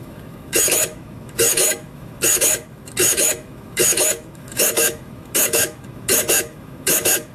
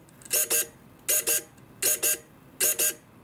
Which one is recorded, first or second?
second